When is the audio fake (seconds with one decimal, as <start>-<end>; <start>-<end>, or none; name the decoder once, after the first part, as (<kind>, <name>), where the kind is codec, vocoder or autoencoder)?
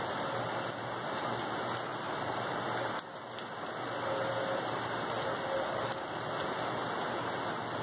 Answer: none